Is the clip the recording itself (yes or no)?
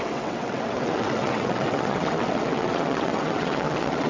no